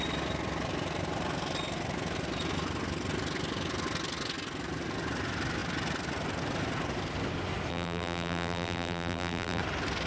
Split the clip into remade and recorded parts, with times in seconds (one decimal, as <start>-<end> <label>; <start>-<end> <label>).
0.0-7.7 recorded; 7.7-9.6 remade; 9.6-10.1 recorded